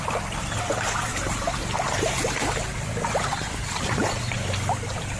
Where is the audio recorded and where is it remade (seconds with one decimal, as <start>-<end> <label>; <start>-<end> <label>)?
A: 0.0-1.1 recorded; 1.1-4.2 remade; 4.2-5.2 recorded